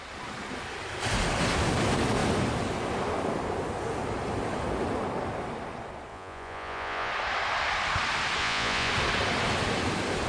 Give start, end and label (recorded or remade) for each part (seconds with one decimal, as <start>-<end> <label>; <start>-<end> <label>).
0.0-6.1 recorded; 6.1-7.1 remade; 7.1-8.4 recorded; 8.4-8.9 remade; 8.9-10.3 recorded